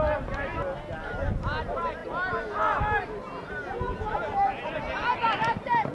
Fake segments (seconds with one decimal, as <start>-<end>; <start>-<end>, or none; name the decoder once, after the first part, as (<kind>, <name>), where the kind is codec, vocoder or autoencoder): none